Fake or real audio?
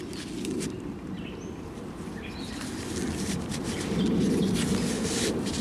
real